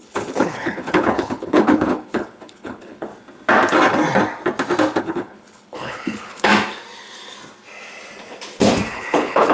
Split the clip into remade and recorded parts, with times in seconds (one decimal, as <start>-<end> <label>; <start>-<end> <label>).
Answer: 0.0-3.1 remade; 3.1-5.0 recorded; 5.0-6.5 remade; 6.5-8.9 recorded; 8.9-9.5 remade